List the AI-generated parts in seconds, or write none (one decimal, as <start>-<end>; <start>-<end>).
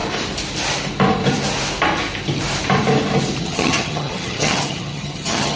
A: 3.4-5.6